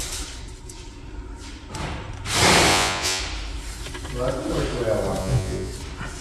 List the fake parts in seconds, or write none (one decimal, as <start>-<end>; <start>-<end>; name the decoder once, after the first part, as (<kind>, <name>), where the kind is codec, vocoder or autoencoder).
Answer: 2.7-3.2 (vocoder, Vocos); 5.2-5.7